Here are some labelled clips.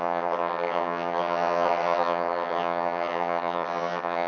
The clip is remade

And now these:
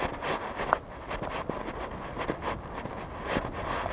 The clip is recorded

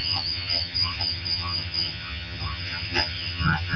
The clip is remade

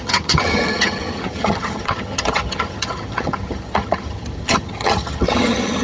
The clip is remade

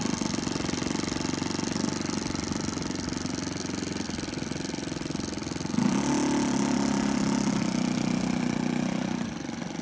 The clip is recorded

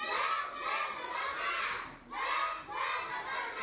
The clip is recorded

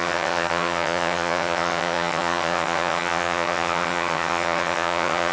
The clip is remade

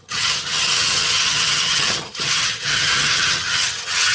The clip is remade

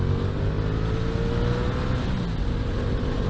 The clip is recorded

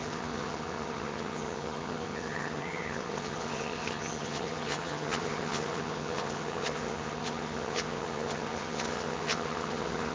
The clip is remade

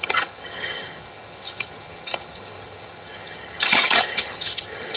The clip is remade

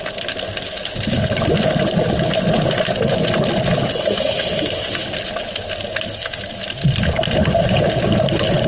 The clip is recorded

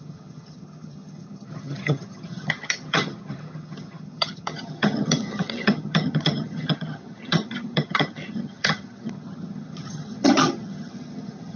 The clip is remade